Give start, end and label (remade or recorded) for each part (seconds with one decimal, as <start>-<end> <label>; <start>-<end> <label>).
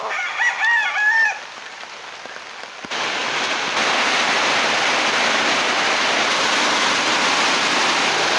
0.0-8.4 recorded